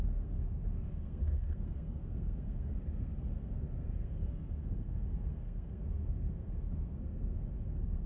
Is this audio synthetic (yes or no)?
yes